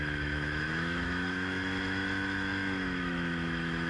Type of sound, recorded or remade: remade